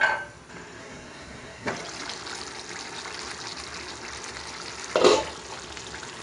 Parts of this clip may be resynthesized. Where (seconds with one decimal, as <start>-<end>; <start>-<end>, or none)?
0.8-1.7